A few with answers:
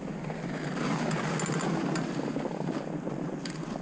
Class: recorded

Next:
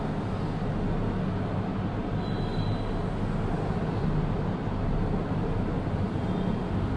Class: recorded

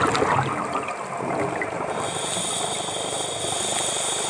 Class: recorded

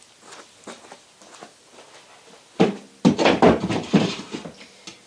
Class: recorded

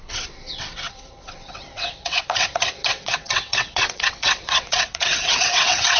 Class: remade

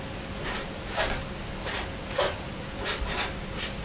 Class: recorded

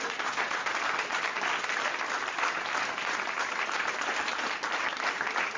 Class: recorded